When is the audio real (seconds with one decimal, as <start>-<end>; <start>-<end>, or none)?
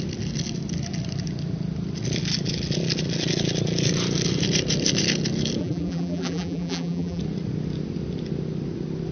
0.0-5.6; 7.2-9.1